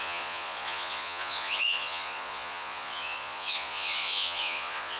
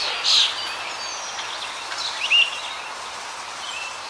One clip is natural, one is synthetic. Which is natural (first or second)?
second